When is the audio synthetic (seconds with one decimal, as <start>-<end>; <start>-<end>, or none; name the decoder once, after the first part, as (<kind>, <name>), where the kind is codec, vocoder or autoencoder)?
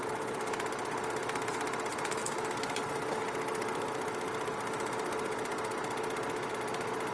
none